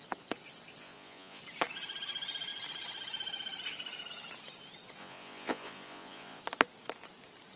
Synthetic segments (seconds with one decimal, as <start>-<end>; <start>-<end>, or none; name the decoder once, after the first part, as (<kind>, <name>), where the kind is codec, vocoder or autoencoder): 0.8-1.4 (vocoder, Vocos); 5.0-6.4